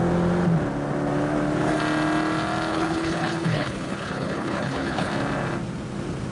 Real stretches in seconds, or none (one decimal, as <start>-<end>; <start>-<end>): 0.0-2.7; 5.1-6.3